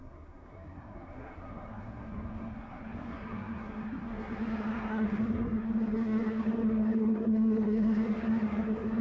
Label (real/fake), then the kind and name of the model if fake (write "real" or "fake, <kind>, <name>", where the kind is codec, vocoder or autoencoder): fake, codec, SNAC